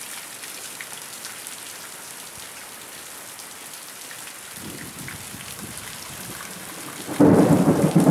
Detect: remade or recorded recorded